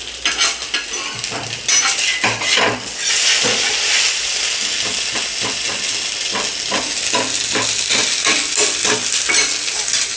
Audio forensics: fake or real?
real